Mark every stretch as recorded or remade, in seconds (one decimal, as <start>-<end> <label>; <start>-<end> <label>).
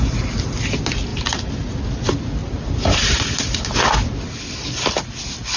0.0-1.1 recorded; 1.1-1.7 remade; 1.7-2.4 recorded; 2.4-3.6 remade; 3.6-5.6 recorded